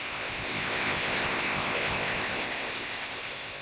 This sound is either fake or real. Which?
fake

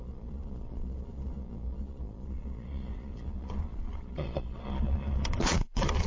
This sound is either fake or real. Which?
fake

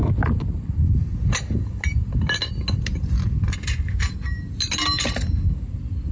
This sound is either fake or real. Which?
real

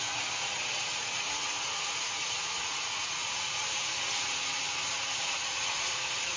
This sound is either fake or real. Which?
fake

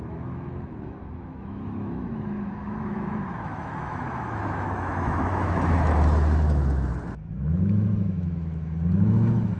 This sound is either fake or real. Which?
fake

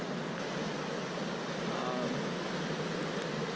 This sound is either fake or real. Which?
real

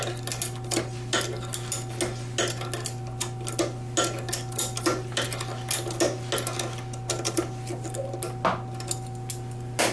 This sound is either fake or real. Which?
real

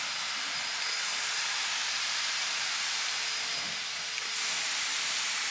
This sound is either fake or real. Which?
fake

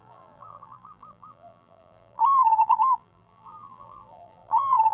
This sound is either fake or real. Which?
fake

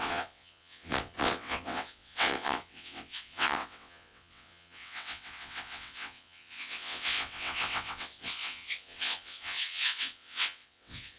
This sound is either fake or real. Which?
fake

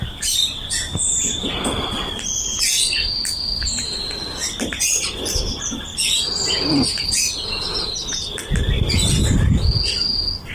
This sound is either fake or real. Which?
real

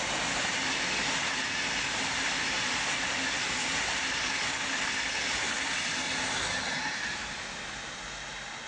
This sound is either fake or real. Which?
real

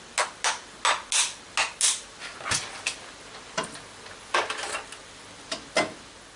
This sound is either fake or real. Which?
real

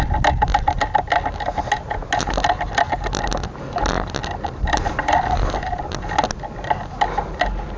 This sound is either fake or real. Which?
real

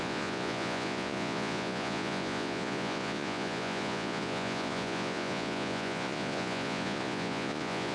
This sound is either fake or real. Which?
fake